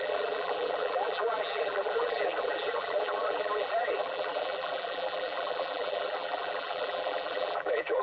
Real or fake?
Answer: fake